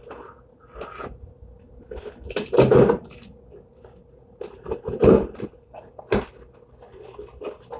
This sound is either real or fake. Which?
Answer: real